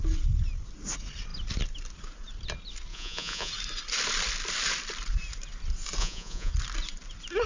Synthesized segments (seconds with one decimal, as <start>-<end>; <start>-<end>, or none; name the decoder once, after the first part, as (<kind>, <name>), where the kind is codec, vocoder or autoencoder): 2.9-3.5 (vocoder, Vocos); 6.0-6.5